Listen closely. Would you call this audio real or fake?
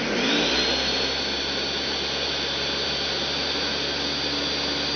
real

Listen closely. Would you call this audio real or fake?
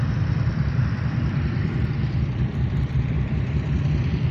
fake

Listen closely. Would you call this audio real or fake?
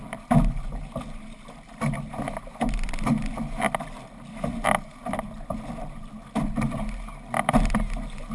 real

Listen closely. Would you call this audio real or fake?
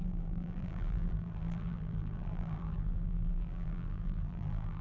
fake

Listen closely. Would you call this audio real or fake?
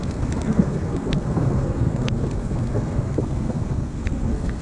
fake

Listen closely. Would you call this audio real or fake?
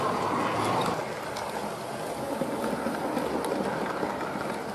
real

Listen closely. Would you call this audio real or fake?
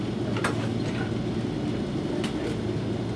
real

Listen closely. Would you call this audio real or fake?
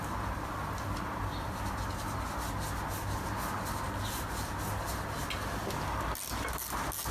real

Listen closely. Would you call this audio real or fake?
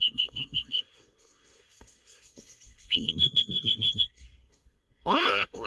fake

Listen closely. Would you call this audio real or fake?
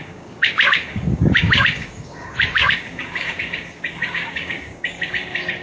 fake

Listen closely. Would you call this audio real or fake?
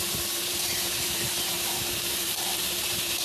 fake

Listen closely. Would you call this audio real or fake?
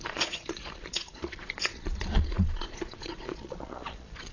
fake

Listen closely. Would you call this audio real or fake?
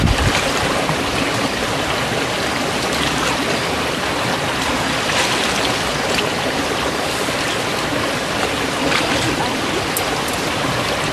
real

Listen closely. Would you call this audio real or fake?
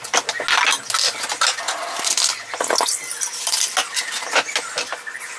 real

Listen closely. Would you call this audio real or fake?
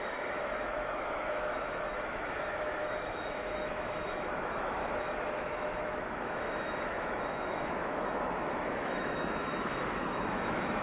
fake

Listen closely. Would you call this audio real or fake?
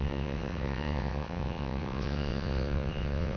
fake